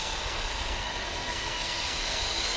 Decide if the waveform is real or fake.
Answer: fake